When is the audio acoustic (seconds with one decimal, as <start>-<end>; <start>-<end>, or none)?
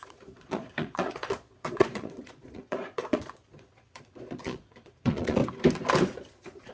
5.4-6.7